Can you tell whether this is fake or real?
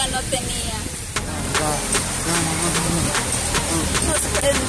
real